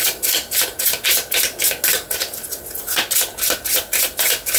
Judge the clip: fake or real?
real